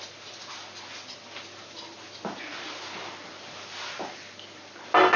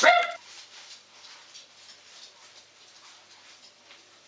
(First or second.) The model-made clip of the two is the second